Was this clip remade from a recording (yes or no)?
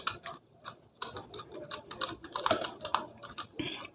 no